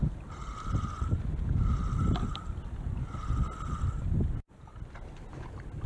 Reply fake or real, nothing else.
real